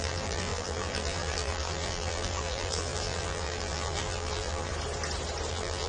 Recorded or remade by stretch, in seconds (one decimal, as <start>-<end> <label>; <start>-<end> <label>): 0.0-4.7 remade; 4.7-5.5 recorded; 5.5-5.9 remade